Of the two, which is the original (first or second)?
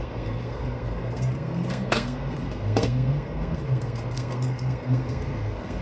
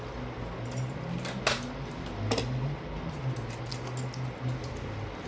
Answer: second